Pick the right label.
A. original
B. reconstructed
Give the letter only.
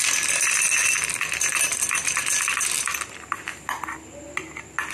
A